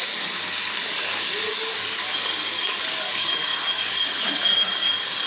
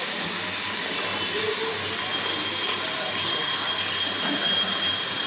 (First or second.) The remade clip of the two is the first